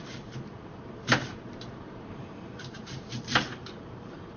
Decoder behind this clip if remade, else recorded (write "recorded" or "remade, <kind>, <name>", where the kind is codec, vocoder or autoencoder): remade, vocoder, BigVGAN v2